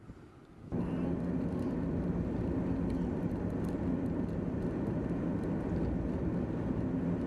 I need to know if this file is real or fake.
real